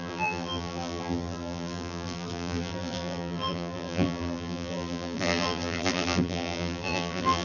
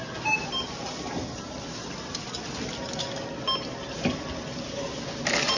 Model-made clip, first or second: first